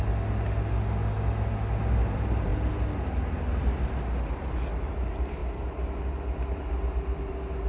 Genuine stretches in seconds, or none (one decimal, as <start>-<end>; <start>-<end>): 0.0-7.7